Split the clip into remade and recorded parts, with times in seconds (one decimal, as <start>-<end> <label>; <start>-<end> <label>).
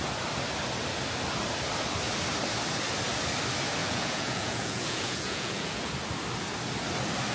0.0-3.8 recorded; 3.8-5.9 remade; 5.9-7.3 recorded